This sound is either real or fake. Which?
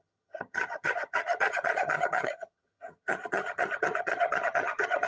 fake